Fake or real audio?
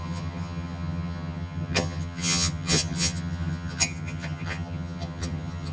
fake